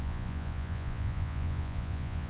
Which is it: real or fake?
fake